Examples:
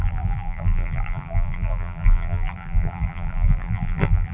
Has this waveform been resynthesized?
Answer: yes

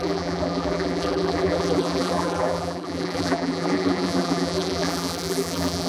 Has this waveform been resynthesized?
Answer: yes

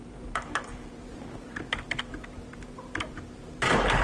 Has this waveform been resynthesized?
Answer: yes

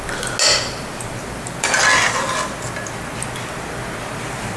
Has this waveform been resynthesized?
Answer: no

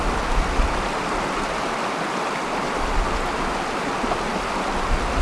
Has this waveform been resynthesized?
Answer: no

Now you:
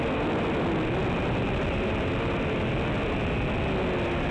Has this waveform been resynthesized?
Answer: no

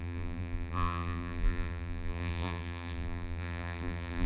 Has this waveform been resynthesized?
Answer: yes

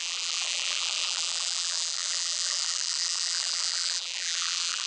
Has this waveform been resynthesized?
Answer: yes